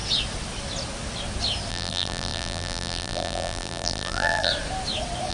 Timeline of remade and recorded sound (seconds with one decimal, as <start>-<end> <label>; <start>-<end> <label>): 0.0-1.7 recorded; 1.7-4.5 remade; 4.5-5.3 recorded

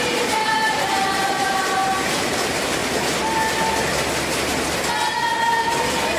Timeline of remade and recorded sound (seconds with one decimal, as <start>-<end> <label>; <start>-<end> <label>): 0.0-0.4 remade; 0.4-1.3 recorded; 1.3-2.8 remade; 2.8-6.2 recorded

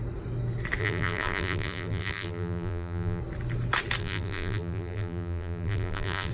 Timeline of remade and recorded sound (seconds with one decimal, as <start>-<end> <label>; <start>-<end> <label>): 0.0-0.8 recorded; 0.8-3.2 remade; 3.2-4.0 recorded; 4.0-6.3 remade

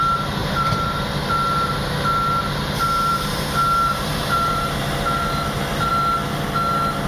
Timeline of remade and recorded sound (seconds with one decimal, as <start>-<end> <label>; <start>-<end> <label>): 0.0-0.4 recorded; 0.4-1.1 remade; 1.1-3.1 recorded; 3.1-5.9 remade; 5.9-7.1 recorded

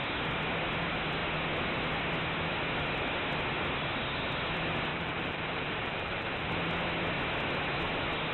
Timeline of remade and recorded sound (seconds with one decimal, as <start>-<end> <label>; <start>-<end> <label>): 0.0-4.9 recorded; 4.9-6.5 remade; 6.5-8.3 recorded